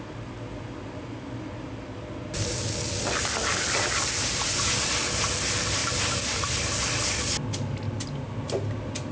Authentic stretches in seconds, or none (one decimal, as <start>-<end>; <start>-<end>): 0.0-9.1